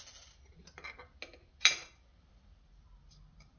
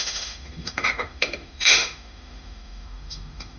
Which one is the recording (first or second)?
first